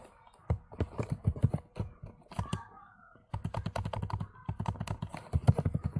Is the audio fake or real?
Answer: real